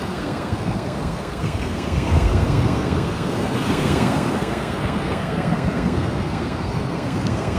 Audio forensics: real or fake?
fake